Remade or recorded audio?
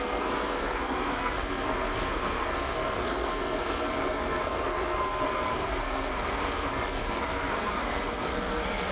remade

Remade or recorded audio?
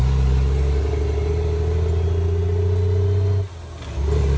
recorded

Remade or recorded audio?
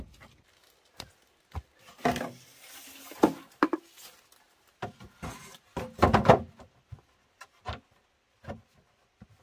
recorded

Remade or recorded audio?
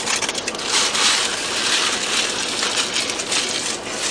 recorded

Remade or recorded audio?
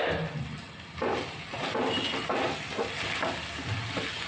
recorded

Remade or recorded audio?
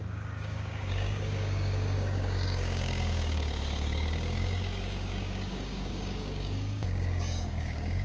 remade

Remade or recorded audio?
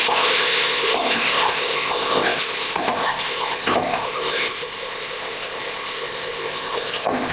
remade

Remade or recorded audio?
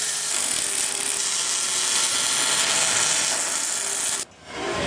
recorded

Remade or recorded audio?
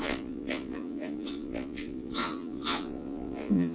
remade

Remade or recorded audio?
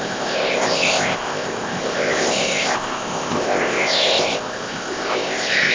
remade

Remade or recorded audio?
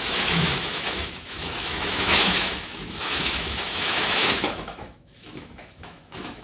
remade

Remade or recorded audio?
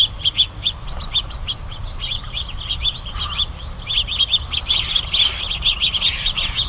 remade